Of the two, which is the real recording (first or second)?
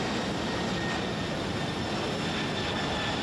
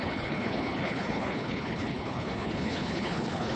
first